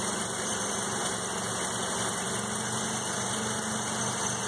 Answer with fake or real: real